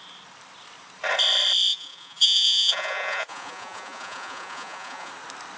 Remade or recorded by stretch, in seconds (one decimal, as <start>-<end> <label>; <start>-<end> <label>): 0.0-1.7 recorded; 1.7-5.1 remade; 5.1-5.6 recorded